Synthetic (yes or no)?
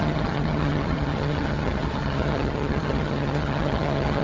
yes